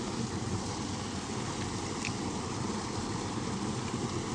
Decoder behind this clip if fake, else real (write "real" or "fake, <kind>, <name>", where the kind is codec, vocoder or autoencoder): real